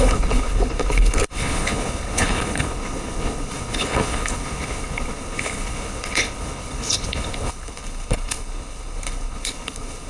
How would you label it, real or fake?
fake